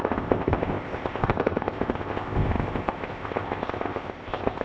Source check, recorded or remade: remade